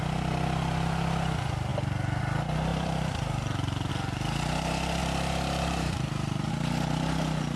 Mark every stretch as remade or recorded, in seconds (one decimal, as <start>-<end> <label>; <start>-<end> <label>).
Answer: 0.0-2.7 recorded; 2.7-3.9 remade; 3.9-5.0 recorded; 5.0-6.5 remade; 6.5-7.6 recorded